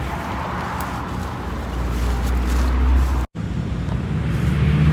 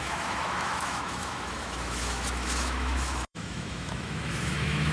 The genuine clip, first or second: first